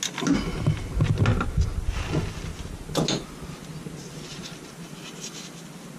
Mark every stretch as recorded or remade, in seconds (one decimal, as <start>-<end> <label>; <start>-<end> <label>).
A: 0.0-6.0 recorded